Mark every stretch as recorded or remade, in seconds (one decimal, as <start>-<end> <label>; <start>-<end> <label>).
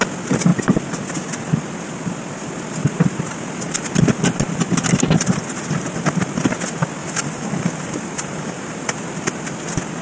0.0-7.0 recorded; 7.0-9.0 remade; 9.0-10.0 recorded